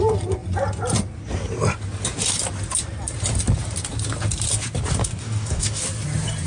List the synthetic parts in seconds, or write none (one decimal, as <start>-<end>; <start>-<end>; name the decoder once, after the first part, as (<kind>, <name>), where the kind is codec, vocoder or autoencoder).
5.0-5.8 (codec, DAC)